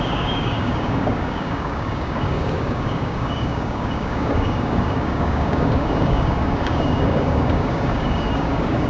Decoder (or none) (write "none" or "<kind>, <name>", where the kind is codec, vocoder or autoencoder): codec, DAC